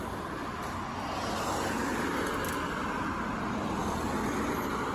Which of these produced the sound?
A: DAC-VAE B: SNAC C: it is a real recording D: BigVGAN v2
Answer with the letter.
C